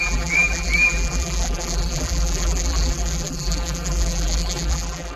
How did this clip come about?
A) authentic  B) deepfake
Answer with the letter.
B